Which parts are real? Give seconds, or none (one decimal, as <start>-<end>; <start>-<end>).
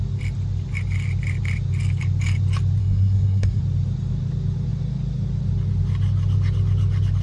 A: 0.0-2.8; 3.6-7.2